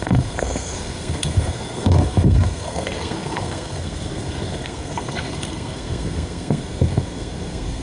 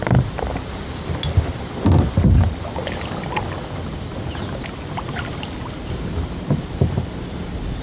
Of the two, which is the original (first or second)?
second